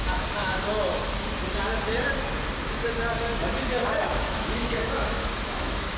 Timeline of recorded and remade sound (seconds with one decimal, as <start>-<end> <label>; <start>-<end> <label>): 0.0-0.9 remade; 0.9-3.7 recorded; 3.7-6.0 remade